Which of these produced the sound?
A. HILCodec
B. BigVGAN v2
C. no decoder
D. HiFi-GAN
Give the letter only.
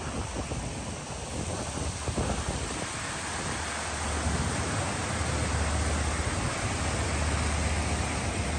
C